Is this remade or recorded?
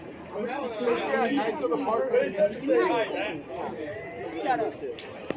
recorded